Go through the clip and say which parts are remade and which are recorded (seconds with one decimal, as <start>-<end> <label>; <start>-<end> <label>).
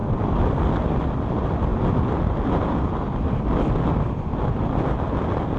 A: 0.0-5.6 recorded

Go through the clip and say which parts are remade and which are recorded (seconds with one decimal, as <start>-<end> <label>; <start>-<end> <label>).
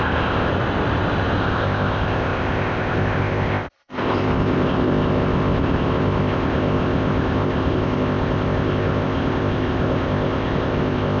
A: 0.0-0.5 remade; 0.5-1.4 recorded; 1.4-11.2 remade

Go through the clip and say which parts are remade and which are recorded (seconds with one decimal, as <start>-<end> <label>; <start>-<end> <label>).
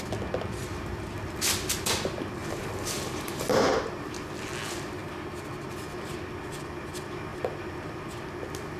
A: 0.0-2.4 recorded; 2.4-3.5 remade; 3.5-8.8 recorded